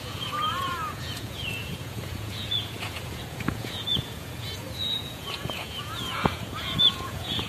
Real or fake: fake